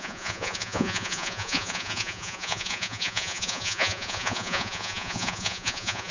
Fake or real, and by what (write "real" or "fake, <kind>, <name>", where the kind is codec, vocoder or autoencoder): fake, vocoder, Vocos